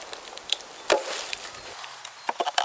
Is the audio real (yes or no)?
no